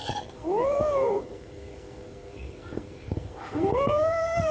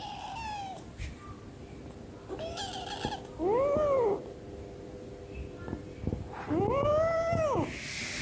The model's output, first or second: first